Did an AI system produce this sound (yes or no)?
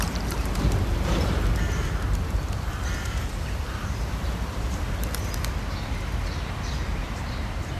yes